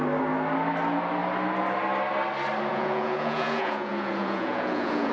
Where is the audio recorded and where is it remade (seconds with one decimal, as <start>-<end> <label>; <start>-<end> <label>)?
0.0-2.7 recorded; 2.7-5.1 remade

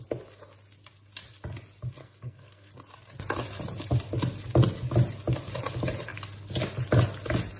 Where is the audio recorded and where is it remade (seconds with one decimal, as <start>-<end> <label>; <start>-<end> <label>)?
0.0-2.0 recorded; 2.0-2.7 remade; 2.7-7.6 recorded

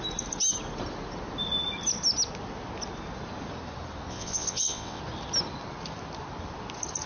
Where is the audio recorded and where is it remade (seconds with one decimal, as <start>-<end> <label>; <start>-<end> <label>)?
0.0-4.1 recorded; 4.1-5.0 remade; 5.0-7.1 recorded

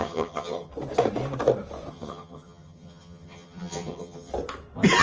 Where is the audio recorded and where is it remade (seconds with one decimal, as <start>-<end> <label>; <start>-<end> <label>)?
0.0-0.7 remade; 0.7-1.9 recorded; 1.9-4.3 remade; 4.3-5.0 recorded

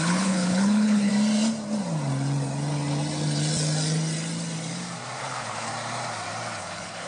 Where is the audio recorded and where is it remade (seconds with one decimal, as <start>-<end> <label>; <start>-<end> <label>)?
0.0-1.1 remade; 1.1-5.2 recorded; 5.2-5.7 remade; 5.7-6.6 recorded; 6.6-7.1 remade

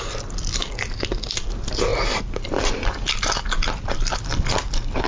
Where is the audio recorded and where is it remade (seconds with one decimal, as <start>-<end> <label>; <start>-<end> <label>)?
0.0-5.1 recorded

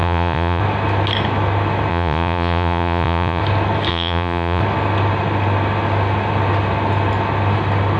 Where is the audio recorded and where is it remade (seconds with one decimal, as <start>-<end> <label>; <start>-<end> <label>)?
0.0-0.6 remade; 0.6-1.9 recorded; 1.9-3.4 remade; 3.4-3.9 recorded; 3.9-4.6 remade; 4.6-8.0 recorded